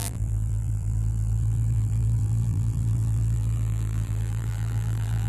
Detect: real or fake fake